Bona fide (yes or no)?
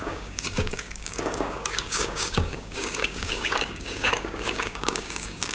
no